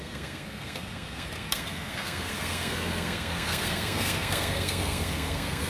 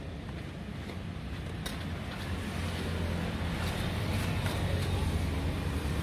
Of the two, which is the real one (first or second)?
second